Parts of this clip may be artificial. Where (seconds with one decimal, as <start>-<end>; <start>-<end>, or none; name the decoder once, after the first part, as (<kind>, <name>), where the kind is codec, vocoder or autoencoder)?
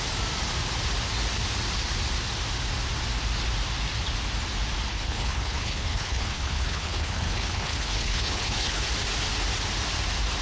4.9-8.8 (codec, HILCodec)